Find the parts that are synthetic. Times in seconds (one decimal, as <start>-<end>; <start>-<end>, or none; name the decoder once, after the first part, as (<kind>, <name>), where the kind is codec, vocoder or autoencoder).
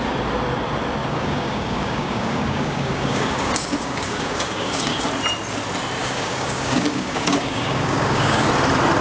1.0-5.0 (codec, DAC); 6.0-8.5